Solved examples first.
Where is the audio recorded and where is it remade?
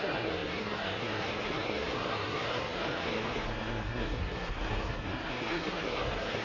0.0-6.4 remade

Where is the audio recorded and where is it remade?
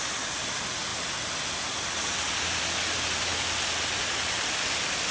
0.0-5.1 recorded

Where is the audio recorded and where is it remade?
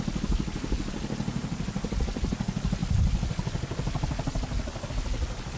0.0-5.6 recorded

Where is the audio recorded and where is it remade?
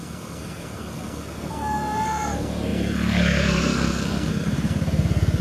0.0-5.4 remade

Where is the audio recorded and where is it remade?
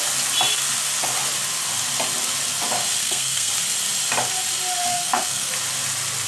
0.0-3.0 recorded; 3.0-3.5 remade; 3.5-4.9 recorded; 4.9-5.5 remade; 5.5-6.3 recorded